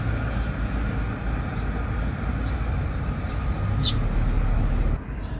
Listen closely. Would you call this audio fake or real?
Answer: real